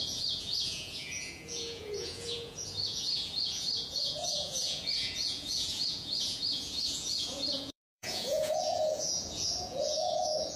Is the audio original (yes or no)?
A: no